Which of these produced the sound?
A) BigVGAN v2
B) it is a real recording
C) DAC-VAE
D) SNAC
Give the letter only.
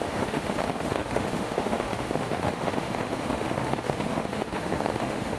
C